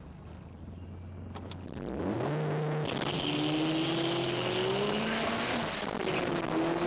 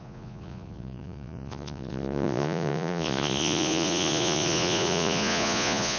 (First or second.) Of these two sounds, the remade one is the second